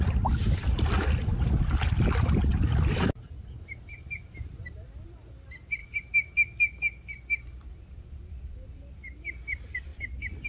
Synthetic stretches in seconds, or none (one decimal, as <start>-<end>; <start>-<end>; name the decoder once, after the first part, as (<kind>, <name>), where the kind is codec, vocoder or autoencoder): none